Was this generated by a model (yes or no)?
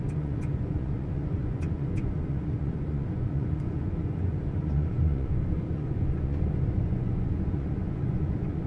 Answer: yes